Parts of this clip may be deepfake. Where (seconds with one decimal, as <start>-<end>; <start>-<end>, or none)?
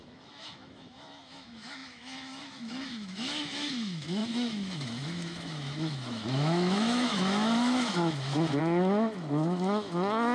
0.0-10.3